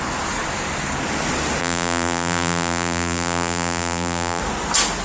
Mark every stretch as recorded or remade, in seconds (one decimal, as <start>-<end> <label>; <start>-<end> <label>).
0.0-1.6 recorded; 1.6-4.4 remade; 4.4-5.0 recorded